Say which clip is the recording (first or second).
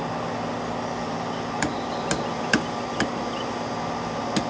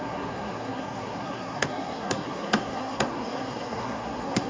first